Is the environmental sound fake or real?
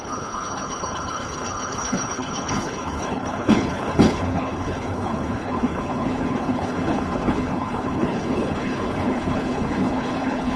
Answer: fake